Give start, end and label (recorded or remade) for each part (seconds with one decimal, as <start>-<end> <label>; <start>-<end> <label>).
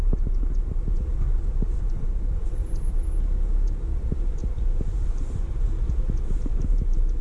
0.0-2.4 recorded; 2.4-2.9 remade; 2.9-4.4 recorded; 4.4-7.2 remade